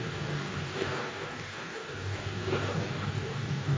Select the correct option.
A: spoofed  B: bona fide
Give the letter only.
A